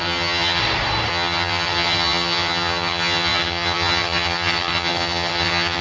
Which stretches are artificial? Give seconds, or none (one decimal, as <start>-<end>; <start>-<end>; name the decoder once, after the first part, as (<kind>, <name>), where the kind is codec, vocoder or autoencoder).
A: 0.0-0.6 (vocoder, HiFi-GAN); 1.1-5.8